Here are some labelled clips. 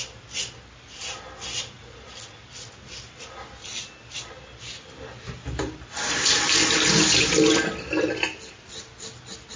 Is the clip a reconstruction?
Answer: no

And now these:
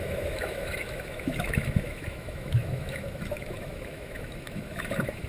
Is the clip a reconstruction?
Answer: yes